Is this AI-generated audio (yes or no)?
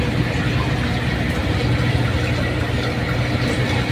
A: no